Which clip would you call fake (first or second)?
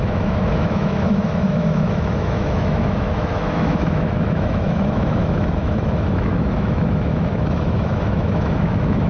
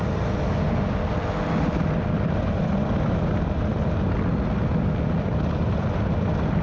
first